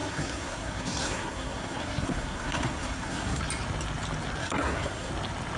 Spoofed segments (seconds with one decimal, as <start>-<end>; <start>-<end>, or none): 0.0-3.4; 4.4-5.1